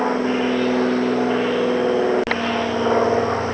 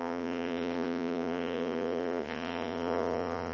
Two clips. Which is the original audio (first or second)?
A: first